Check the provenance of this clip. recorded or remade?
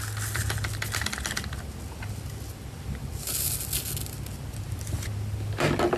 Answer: recorded